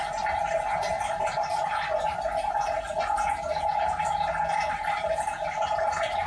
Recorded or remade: recorded